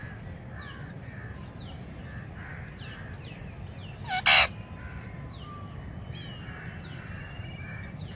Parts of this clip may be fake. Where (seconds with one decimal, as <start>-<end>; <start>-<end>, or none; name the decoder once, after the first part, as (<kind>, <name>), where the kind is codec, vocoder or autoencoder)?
none

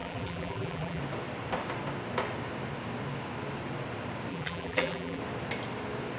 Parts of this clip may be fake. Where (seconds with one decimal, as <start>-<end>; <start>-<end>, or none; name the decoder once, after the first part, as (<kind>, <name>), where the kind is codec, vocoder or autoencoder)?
0.0-1.0 (vocoder, BigVGAN v2); 4.3-5.2

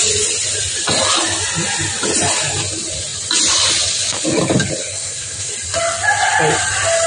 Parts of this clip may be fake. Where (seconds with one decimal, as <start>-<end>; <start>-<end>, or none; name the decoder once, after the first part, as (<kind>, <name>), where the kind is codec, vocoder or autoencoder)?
4.9-5.5 (codec, SNAC)